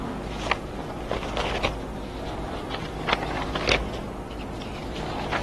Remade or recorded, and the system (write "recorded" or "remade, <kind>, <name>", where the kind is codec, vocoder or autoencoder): recorded